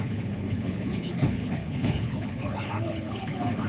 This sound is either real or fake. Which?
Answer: fake